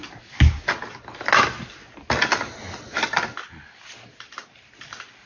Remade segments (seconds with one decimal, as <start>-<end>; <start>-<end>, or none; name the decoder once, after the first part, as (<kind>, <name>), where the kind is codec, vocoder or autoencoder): none